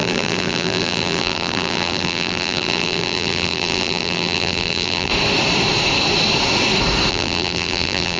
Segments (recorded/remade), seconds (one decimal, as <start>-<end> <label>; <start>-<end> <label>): 0.0-5.1 remade; 5.1-7.1 recorded; 7.1-8.2 remade